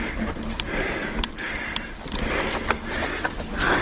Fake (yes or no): no